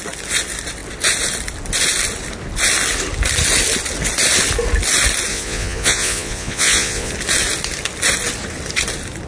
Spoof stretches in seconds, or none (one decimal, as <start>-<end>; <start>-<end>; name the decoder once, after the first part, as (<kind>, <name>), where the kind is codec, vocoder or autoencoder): 5.3-7.1 (vocoder, Vocos)